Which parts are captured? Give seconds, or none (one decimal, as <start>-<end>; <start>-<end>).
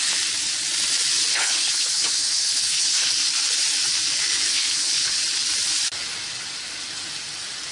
0.0-1.3; 3.1-4.5; 5.2-7.7